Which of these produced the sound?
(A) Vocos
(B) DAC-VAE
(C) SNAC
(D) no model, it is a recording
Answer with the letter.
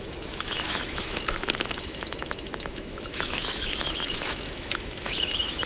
B